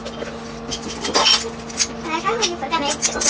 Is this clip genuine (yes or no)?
yes